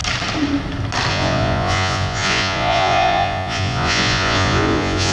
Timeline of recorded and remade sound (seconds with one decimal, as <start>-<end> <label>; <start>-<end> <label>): 0.0-1.1 recorded; 1.1-5.1 remade